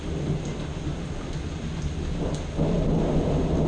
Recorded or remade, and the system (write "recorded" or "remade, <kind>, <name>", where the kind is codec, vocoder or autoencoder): recorded